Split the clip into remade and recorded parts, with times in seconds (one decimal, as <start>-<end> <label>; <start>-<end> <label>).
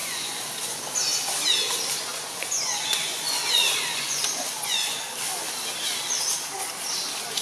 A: 0.0-0.8 remade; 0.8-2.1 recorded; 2.1-5.0 remade; 5.0-7.4 recorded